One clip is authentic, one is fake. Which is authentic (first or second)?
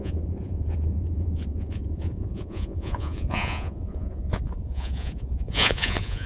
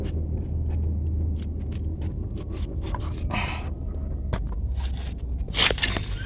second